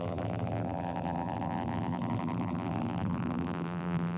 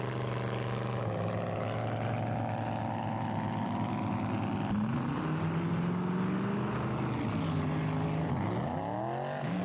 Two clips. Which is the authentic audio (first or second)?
second